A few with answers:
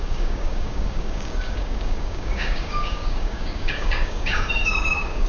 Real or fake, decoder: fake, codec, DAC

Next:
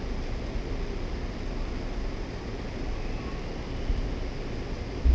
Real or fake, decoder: real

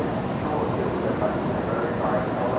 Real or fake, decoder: real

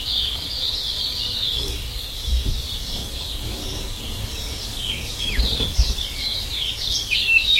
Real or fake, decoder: fake, codec, DAC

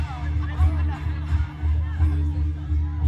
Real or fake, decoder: real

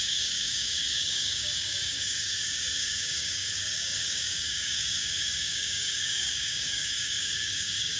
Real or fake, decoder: fake, codec, DAC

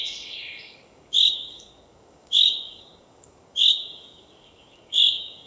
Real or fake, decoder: fake, codec, DAC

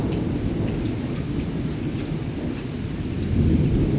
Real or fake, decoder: real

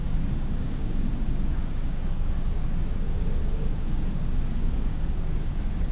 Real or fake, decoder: fake, codec, DAC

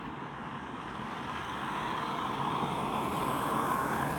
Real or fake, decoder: fake, codec, DAC